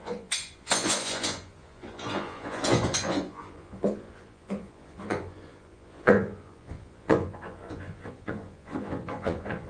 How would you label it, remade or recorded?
remade